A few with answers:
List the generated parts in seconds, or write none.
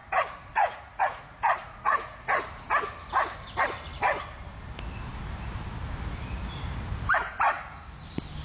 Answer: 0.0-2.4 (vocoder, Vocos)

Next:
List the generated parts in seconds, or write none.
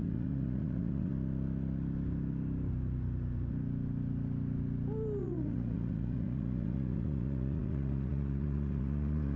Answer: 0.0-1.1 (vocoder, Vocos); 5.2-9.4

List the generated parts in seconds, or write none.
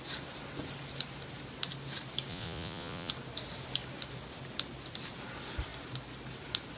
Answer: 2.3-3.1 (vocoder, Vocos)